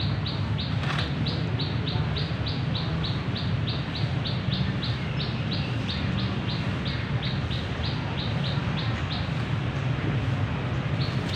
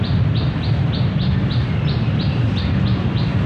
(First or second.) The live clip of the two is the first